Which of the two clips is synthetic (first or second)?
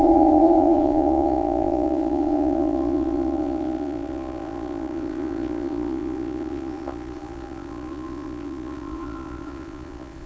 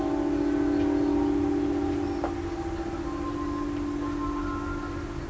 first